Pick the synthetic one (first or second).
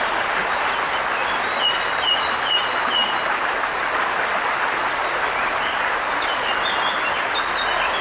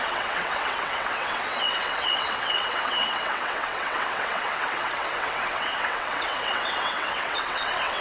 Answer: second